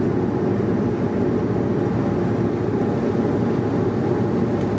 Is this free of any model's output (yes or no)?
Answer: yes